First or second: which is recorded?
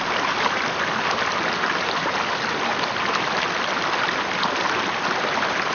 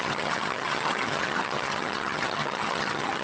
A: first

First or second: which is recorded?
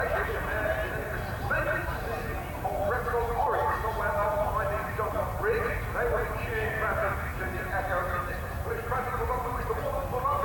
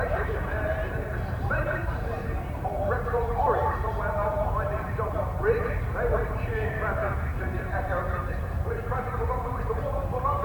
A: first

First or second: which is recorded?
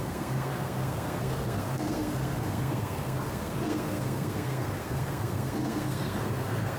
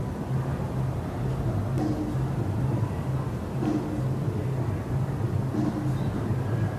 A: second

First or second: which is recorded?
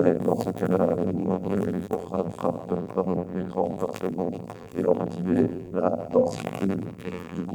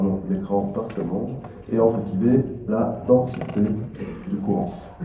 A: second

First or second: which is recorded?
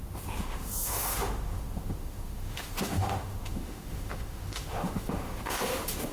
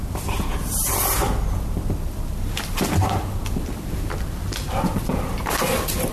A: second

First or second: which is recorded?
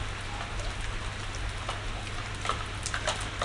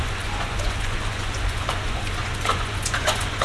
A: first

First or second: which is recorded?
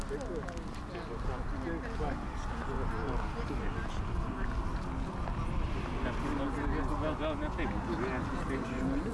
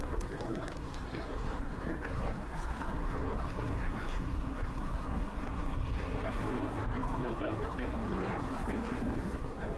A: first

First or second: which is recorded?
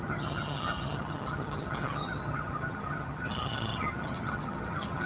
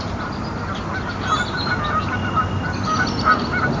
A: second